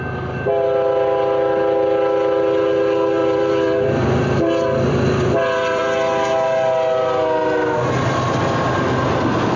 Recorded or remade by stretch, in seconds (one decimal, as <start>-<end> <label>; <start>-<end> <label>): 0.0-3.2 recorded; 3.2-5.8 remade; 5.8-9.6 recorded